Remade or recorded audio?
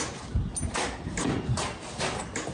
recorded